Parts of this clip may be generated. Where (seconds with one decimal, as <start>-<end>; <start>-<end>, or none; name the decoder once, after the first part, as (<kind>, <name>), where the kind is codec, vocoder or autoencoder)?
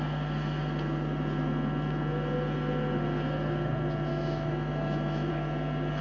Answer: 4.1-5.3 (autoencoder, DAC-VAE)